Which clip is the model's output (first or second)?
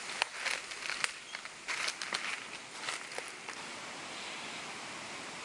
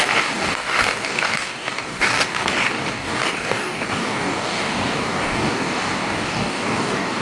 second